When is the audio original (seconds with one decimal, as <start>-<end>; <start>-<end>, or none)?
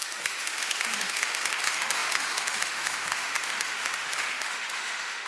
none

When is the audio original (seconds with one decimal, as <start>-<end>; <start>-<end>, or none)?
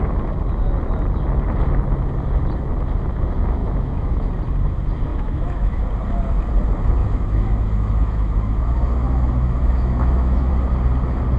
0.0-3.6; 4.3-5.1; 5.8-7.0; 10.5-11.4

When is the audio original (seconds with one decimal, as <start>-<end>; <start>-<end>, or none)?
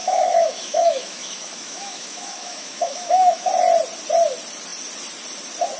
3.5-5.8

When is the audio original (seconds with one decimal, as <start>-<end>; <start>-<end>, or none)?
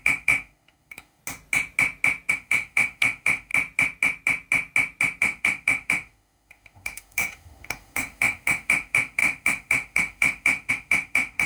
1.2-2.3; 3.5-5.2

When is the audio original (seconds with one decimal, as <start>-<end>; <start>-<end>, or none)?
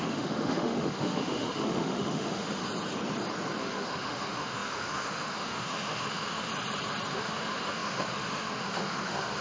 2.6-3.6; 6.5-7.1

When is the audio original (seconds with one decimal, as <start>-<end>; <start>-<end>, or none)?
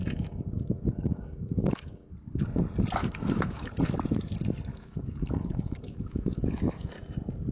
2.1-3.0; 3.8-4.7; 6.9-7.5